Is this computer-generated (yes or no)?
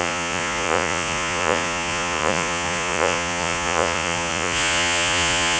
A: yes